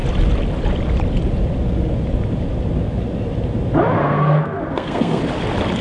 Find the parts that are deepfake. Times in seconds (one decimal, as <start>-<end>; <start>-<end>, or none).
4.0-5.2